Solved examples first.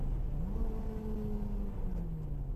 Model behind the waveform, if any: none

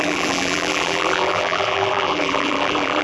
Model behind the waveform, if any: vocoder, BigVGAN v2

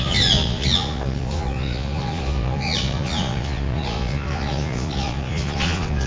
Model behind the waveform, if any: vocoder, Vocos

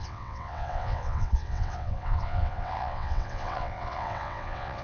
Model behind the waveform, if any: vocoder, WaveNeXt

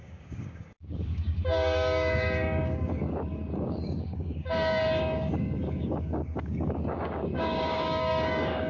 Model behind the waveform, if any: codec, DAC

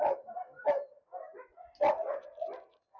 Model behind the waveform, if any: none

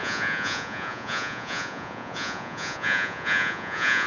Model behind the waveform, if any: vocoder, Vocos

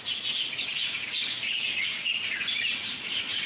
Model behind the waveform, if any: vocoder, Vocos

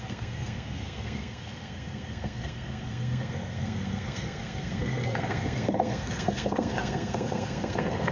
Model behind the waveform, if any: codec, SNAC